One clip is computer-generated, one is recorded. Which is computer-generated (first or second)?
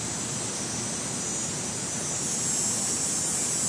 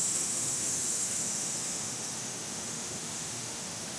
second